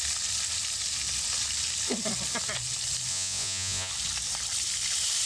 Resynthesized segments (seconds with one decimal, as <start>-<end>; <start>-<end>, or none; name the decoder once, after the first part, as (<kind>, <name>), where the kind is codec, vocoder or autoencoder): 3.1-3.9 (vocoder, Vocos)